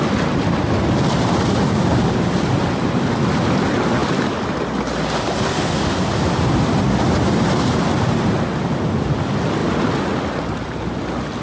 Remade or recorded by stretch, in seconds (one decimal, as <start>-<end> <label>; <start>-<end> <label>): 0.0-11.4 recorded